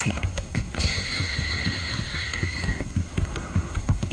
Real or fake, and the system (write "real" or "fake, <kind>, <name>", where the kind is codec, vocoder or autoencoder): fake, codec, SNAC